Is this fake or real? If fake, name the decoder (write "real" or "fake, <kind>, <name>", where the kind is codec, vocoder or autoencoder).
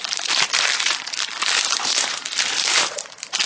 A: fake, vocoder, BigVGAN v2